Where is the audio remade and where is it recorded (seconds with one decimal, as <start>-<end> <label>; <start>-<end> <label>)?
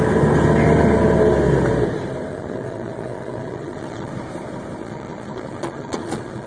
0.0-2.3 recorded; 2.3-4.1 remade; 4.1-4.8 recorded; 4.8-6.5 remade